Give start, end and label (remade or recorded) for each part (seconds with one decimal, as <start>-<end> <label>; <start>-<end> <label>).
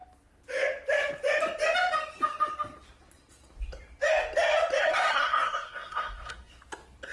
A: 0.0-4.8 recorded; 4.8-6.5 remade; 6.5-7.1 recorded